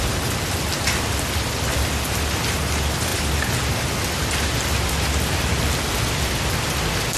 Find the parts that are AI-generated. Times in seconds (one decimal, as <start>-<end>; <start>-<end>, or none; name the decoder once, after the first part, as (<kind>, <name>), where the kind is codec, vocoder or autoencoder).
none